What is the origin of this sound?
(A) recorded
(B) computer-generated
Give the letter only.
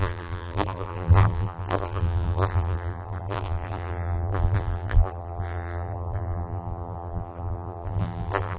B